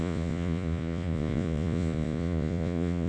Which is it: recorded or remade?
remade